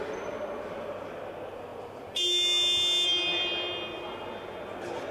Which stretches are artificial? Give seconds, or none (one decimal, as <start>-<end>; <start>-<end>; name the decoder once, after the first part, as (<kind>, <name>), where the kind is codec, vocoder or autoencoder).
none